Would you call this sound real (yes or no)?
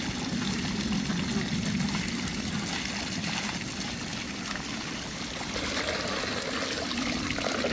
yes